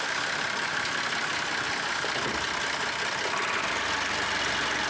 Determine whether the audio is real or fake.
real